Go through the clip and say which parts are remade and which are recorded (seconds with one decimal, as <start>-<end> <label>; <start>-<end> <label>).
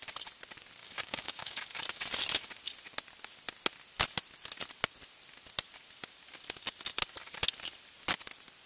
0.0-0.8 recorded; 0.8-1.8 remade; 1.8-8.7 recorded